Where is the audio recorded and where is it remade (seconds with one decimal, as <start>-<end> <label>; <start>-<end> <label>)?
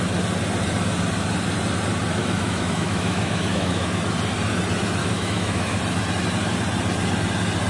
0.0-2.2 recorded; 2.2-4.0 remade; 4.0-5.0 recorded; 5.0-5.8 remade; 5.8-7.7 recorded